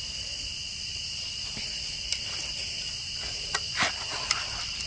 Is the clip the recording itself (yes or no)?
no